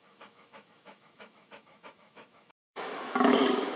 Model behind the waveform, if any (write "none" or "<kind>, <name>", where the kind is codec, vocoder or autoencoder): autoencoder, DAC-VAE